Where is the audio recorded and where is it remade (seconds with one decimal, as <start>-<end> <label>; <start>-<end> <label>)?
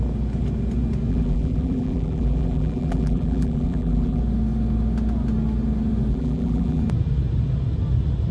0.0-1.1 recorded; 1.1-4.2 remade; 4.2-6.1 recorded; 6.1-6.8 remade; 6.8-8.3 recorded